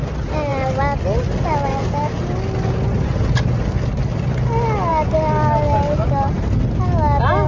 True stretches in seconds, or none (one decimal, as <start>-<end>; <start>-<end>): 0.0-7.5